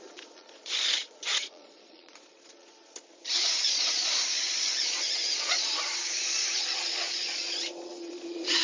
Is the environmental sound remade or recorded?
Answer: remade